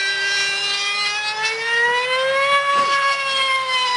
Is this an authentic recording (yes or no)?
yes